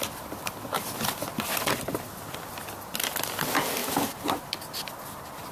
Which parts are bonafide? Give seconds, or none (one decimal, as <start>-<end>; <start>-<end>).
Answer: 0.0-5.5